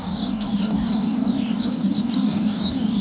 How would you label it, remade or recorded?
remade